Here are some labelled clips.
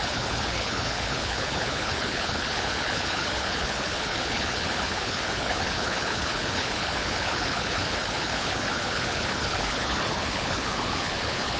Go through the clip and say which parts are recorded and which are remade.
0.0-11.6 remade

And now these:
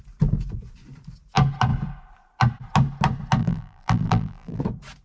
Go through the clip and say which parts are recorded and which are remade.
0.0-3.4 recorded; 3.4-4.6 remade; 4.6-5.0 recorded

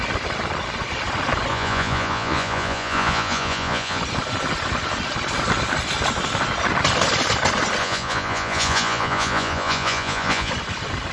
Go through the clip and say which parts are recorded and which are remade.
0.0-1.5 recorded; 1.5-4.0 remade; 4.0-7.8 recorded; 7.8-10.5 remade; 10.5-11.1 recorded

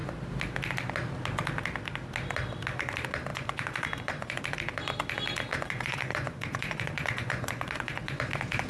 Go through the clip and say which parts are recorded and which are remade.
0.0-3.3 recorded; 3.3-4.4 remade; 4.4-5.5 recorded; 5.5-8.2 remade; 8.2-8.7 recorded

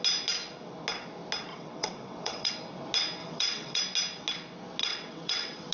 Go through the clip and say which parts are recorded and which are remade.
0.0-1.5 recorded; 1.5-2.5 remade; 2.5-3.2 recorded; 3.2-3.8 remade; 3.8-4.8 recorded; 4.8-5.7 remade

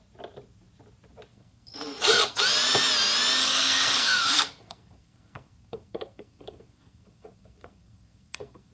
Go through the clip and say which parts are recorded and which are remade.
0.0-1.3 recorded; 1.3-2.4 remade; 2.4-3.4 recorded; 3.4-8.7 remade

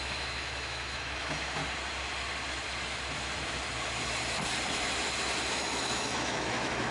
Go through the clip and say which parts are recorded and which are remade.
0.0-1.6 remade; 1.6-5.5 recorded; 5.5-6.9 remade